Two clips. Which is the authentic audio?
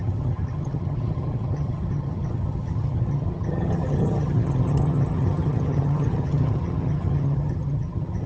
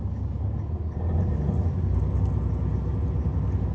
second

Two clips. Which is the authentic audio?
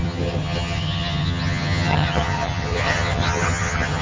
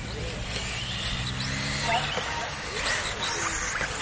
second